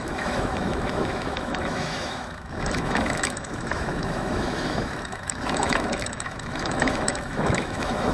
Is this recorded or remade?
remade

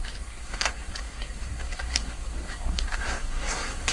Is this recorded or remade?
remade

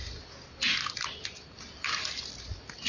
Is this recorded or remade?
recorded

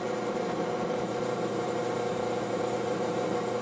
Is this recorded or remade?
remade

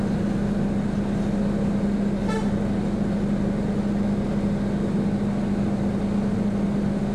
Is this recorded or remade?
recorded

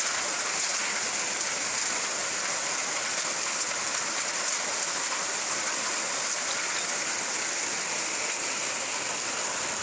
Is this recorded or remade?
recorded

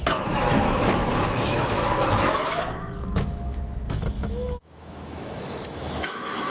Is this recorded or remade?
remade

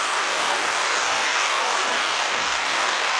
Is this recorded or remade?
remade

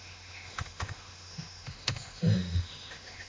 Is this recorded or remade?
remade